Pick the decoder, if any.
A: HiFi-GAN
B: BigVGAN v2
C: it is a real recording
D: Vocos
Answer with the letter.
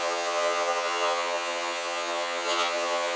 A